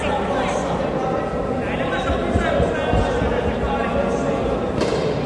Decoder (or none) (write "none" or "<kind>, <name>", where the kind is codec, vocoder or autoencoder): none